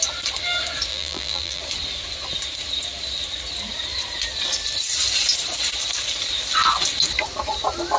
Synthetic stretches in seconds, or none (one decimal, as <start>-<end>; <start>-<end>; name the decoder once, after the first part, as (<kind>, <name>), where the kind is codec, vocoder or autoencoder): 0.9-1.6 (vocoder, BigVGAN v2)